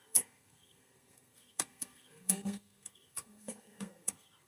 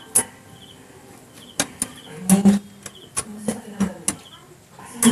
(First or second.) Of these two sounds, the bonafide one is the second